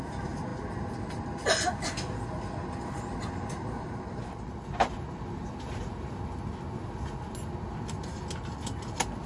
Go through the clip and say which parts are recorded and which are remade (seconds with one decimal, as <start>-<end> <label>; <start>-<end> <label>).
0.0-9.3 recorded